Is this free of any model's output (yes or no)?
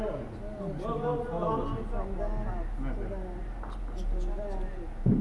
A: yes